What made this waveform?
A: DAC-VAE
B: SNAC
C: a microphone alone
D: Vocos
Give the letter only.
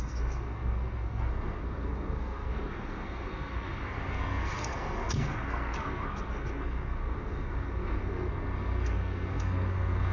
B